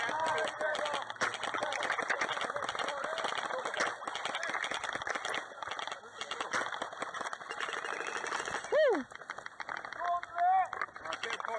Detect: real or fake real